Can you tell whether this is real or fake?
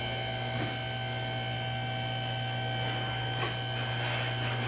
real